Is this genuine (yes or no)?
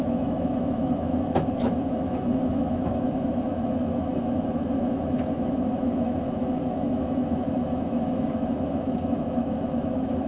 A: no